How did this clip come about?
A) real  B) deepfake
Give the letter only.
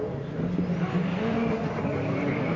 A